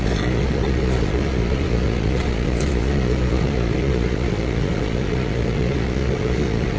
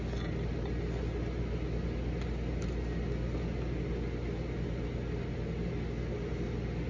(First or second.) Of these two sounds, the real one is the second